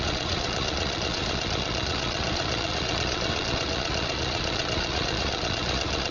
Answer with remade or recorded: remade